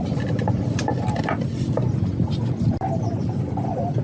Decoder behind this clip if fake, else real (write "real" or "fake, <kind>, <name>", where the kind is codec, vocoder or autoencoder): real